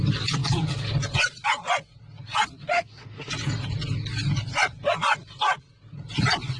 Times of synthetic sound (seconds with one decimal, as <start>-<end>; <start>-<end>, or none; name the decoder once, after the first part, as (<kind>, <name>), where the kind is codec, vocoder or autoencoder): 2.7-3.3 (autoencoder, DAC-VAE)